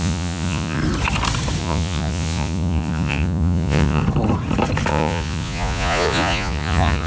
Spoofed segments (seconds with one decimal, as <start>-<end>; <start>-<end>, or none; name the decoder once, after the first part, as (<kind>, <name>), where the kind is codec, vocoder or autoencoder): 0.0-0.8 (vocoder, Vocos); 1.6-4.0; 4.9-7.1